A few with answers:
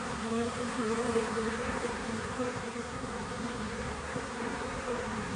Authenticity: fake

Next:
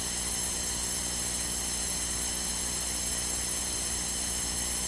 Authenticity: real